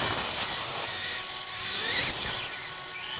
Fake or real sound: real